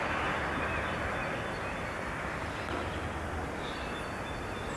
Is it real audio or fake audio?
real